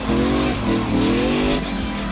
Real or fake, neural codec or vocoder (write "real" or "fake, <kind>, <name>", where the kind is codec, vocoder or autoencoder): real